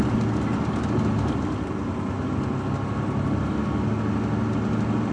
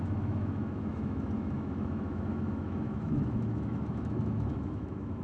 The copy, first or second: second